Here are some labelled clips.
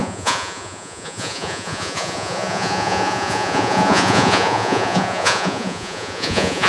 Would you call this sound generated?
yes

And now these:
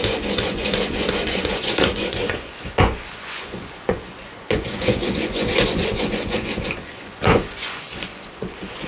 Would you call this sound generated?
yes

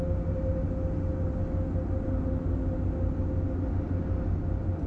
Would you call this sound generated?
no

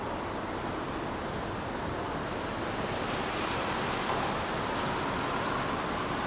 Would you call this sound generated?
no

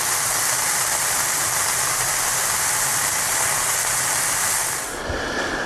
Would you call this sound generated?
no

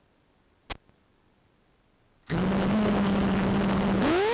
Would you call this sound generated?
no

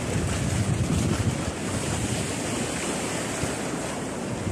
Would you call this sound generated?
no